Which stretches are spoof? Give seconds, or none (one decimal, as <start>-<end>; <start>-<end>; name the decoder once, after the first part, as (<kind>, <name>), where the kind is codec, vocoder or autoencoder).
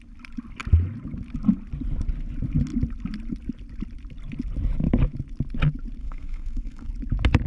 6.0-6.9 (codec, SNAC)